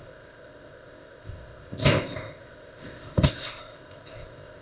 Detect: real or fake fake